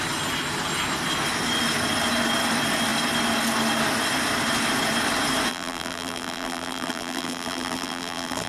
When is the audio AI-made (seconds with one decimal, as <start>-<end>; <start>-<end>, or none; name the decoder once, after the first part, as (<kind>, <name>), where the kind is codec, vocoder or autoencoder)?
5.5-8.5 (vocoder, BigVGAN v2)

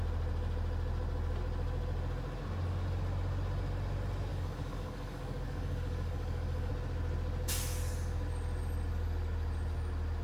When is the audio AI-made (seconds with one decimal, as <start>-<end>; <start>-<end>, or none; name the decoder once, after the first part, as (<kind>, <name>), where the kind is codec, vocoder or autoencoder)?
4.3-6.7 (codec, DAC)

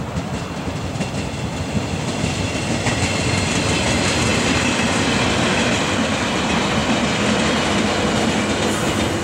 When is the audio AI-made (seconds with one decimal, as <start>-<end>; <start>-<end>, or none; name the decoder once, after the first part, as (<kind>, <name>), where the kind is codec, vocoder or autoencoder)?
none

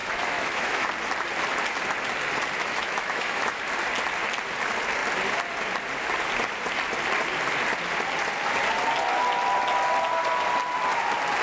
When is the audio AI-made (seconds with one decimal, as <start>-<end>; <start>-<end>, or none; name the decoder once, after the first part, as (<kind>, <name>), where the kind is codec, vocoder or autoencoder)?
0.0-0.9 (autoencoder, DAC-VAE); 2.6-3.6

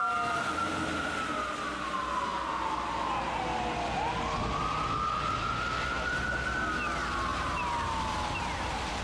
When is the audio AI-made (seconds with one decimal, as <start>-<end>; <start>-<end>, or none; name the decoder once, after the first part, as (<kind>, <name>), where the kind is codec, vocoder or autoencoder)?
0.0-1.3 (vocoder, BigVGAN v2)

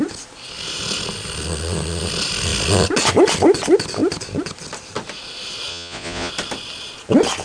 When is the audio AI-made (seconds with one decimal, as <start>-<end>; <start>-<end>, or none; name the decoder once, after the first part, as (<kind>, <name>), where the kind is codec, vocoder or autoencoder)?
5.7-6.3 (vocoder, Vocos)